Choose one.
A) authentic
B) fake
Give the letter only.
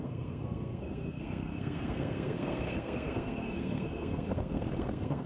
B